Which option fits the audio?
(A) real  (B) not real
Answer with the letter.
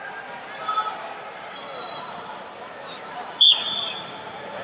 B